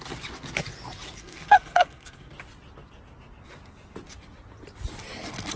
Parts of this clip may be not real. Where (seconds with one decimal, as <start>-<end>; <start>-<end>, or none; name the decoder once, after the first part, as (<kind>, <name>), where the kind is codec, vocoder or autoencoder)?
1.2-2.3 (codec, SNAC)